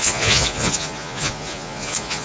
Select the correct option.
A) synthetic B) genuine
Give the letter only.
A